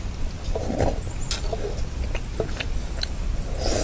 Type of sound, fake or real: real